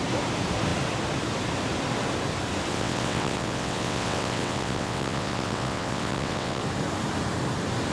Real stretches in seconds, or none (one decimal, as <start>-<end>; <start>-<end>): 0.0-2.7; 6.6-7.9